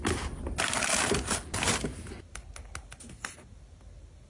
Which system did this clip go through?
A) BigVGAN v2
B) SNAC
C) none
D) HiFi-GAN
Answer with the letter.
C